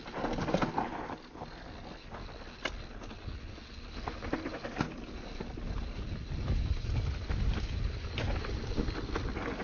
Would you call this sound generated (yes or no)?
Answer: no